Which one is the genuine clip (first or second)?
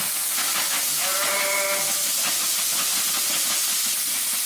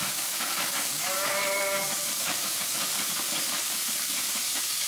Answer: first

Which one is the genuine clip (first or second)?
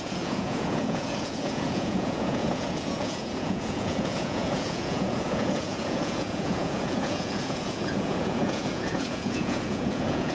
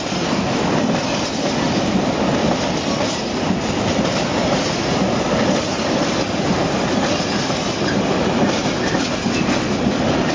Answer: second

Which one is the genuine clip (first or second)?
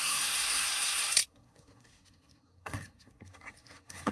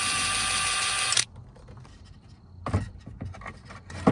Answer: second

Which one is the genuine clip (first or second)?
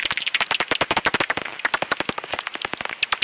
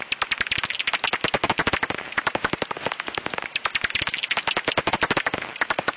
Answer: second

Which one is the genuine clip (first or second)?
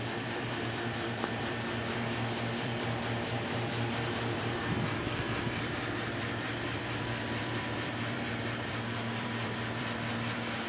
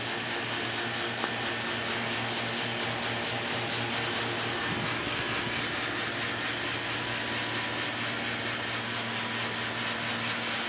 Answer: second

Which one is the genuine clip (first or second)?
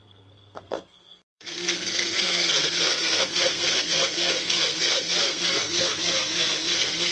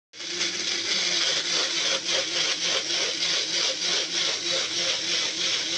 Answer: second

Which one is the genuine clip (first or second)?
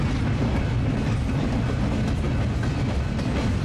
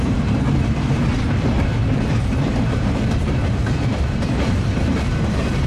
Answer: first